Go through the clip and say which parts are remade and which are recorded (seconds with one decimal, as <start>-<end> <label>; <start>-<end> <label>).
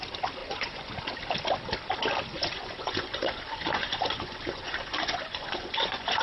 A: 0.0-0.4 recorded; 0.4-0.9 remade; 0.9-2.3 recorded; 2.3-6.2 remade